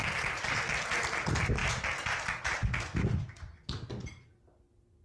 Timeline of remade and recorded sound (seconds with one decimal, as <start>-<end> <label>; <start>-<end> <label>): 0.0-5.0 recorded